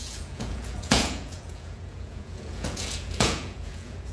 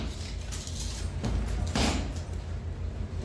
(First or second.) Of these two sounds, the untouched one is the second